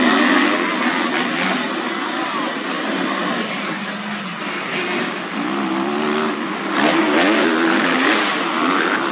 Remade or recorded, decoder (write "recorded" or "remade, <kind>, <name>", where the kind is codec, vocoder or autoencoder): recorded